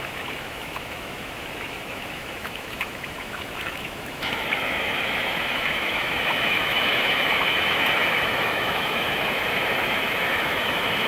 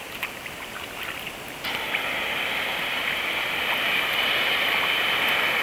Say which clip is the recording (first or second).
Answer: second